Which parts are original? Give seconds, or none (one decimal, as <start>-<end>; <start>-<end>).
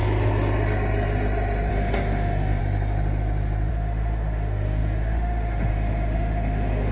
0.0-1.7; 2.6-3.7